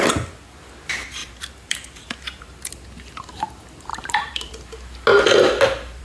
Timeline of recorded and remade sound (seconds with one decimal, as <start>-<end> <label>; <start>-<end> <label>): 0.0-1.2 recorded; 1.2-2.7 remade; 2.7-3.9 recorded; 3.9-4.5 remade; 4.5-6.0 recorded